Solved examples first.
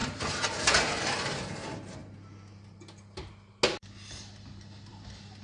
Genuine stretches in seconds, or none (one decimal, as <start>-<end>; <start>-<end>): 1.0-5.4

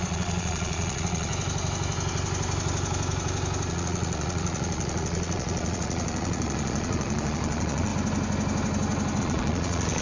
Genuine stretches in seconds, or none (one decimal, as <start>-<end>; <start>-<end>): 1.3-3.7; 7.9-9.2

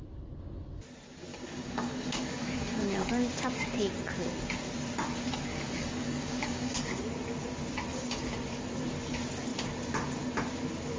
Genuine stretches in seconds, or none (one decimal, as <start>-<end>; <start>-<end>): 0.0-1.3; 3.1-5.5; 7.0-11.0

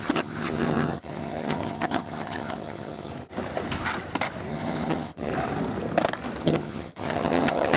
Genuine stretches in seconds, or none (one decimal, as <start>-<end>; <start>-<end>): 3.1-4.5; 5.3-6.4